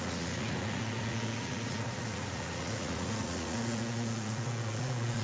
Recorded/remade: remade